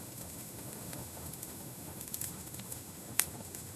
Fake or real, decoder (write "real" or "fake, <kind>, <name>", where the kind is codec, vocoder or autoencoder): fake, autoencoder, DAC-VAE